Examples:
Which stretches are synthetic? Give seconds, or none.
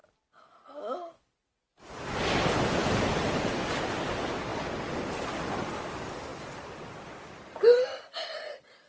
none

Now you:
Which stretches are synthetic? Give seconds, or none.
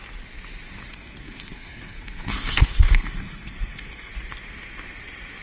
0.9-4.1 (codec, SNAC)